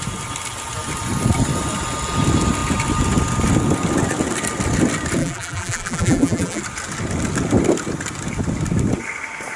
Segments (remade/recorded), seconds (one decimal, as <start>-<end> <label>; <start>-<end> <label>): 0.0-5.2 recorded; 5.2-6.6 remade; 6.6-9.6 recorded